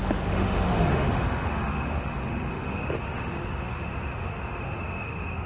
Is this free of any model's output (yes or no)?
no